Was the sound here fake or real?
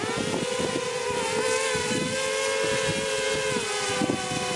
real